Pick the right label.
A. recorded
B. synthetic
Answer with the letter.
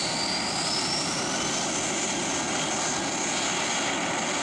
A